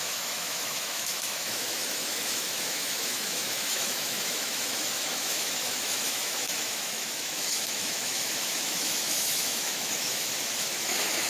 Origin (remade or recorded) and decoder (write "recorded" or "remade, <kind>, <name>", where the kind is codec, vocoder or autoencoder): remade, autoencoder, DAC-VAE